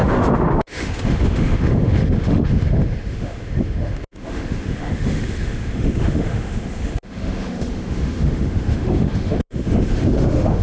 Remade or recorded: remade